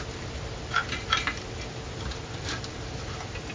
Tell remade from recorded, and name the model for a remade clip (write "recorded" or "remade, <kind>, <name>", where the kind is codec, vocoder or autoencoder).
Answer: recorded